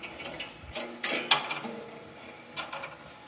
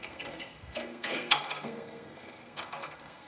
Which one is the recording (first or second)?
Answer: first